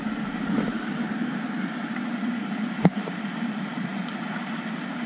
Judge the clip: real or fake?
fake